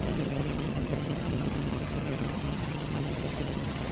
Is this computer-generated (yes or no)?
yes